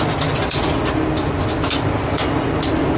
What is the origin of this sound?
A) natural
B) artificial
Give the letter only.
A